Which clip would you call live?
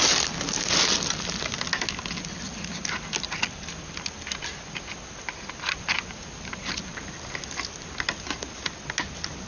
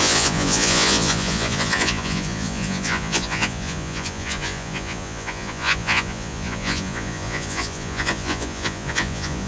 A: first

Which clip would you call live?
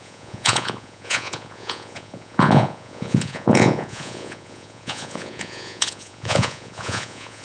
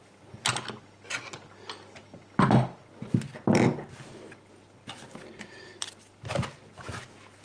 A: second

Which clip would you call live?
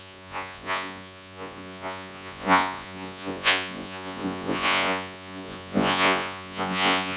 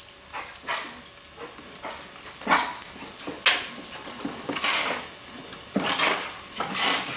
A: second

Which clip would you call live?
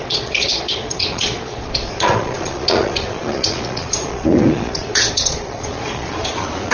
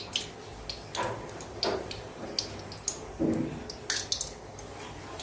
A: second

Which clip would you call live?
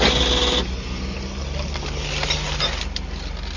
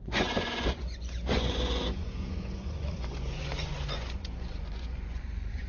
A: first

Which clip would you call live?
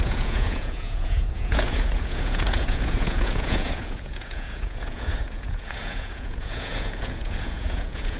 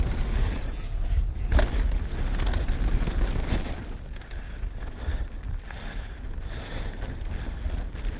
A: second